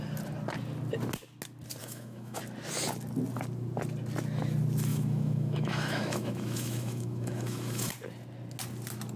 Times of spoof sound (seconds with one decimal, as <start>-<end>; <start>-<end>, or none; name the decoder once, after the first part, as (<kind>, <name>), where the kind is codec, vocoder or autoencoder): 1.8-2.4 (autoencoder, DAC-VAE); 4.9-7.9